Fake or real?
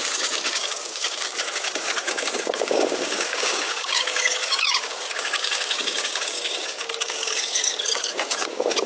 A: fake